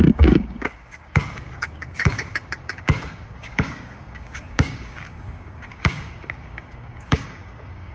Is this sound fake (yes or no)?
yes